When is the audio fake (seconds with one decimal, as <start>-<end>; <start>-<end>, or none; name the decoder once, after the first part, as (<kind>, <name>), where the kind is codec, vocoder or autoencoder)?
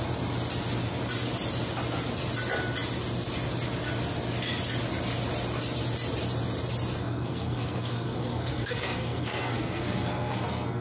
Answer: 7.0-10.8 (codec, SNAC)